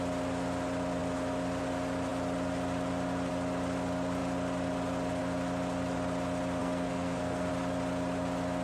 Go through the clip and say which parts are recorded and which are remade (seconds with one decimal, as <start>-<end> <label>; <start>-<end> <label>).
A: 0.0-6.6 recorded; 6.6-7.5 remade; 7.5-8.6 recorded